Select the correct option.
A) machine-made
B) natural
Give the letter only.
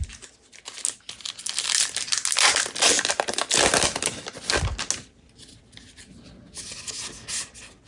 B